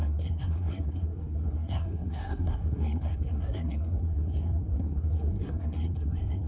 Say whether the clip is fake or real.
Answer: fake